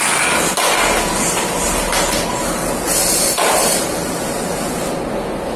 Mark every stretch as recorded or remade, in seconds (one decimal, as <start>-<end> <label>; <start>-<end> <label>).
0.0-5.6 recorded